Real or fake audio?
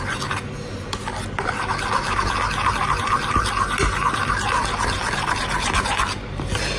real